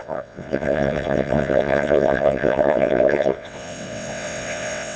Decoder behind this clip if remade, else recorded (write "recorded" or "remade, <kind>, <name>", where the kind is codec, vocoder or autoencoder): remade, vocoder, WaveNeXt